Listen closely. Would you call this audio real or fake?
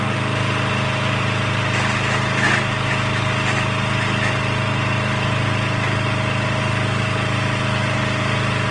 real